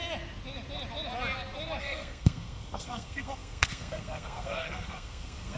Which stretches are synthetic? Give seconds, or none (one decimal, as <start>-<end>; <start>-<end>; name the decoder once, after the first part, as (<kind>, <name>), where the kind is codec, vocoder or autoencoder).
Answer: 1.8-5.6 (codec, SNAC)